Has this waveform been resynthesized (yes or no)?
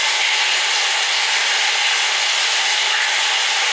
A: no